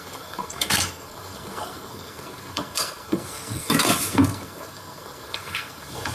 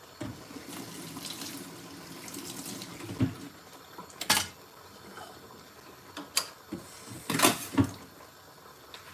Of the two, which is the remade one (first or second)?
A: first